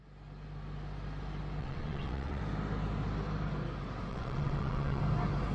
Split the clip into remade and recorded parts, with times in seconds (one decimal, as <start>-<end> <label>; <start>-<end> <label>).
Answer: 0.0-1.6 recorded; 1.6-2.4 remade; 2.4-4.1 recorded; 4.1-5.0 remade; 5.0-5.5 recorded